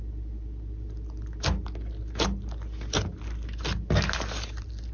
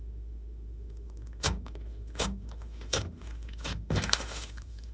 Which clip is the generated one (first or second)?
second